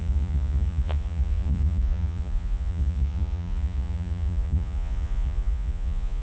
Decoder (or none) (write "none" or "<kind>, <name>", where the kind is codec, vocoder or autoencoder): vocoder, Vocos